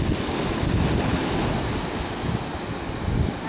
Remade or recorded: recorded